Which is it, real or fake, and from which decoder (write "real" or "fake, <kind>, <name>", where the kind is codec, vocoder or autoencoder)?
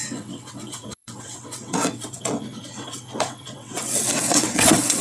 fake, vocoder, WaveNeXt